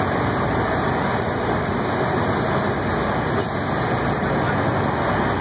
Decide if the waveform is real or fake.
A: real